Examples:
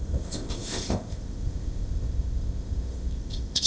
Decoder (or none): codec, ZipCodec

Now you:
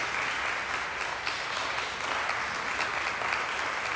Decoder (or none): none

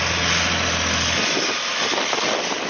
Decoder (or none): none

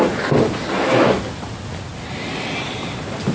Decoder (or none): none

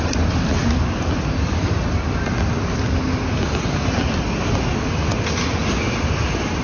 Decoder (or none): none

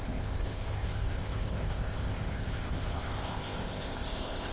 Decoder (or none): codec, ZipCodec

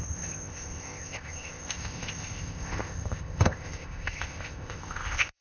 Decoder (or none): codec, ZipCodec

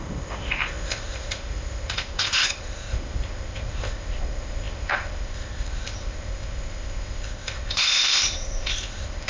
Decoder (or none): codec, ZipCodec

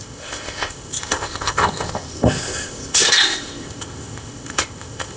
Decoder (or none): codec, ZipCodec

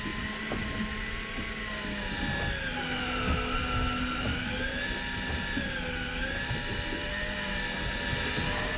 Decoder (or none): none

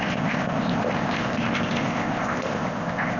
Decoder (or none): codec, ZipCodec